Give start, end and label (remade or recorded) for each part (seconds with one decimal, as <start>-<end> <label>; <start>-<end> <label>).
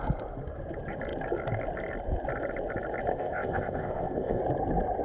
0.0-3.1 recorded; 3.1-4.4 remade; 4.4-5.0 recorded